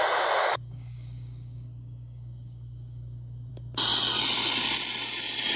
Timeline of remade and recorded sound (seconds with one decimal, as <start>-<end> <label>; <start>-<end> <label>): 0.0-0.4 recorded; 0.4-3.5 remade; 3.5-5.6 recorded